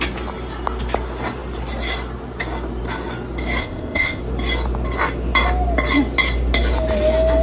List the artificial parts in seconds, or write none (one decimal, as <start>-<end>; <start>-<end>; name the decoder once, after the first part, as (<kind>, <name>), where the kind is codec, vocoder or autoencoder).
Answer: 3.6-4.2 (codec, ZipCodec)